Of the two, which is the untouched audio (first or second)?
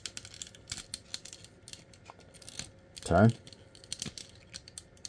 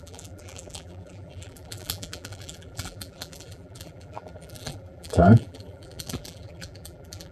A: first